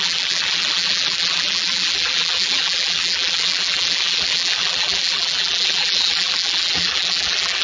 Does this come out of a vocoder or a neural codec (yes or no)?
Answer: yes